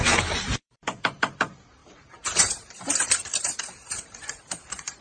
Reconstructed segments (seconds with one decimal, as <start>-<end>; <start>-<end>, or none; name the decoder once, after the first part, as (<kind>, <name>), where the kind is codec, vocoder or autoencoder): 0.0-5.0 (vocoder, BigVGAN v2)